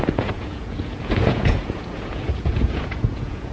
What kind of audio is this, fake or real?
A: fake